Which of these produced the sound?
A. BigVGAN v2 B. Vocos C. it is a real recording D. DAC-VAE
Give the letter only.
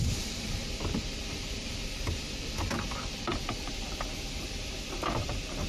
A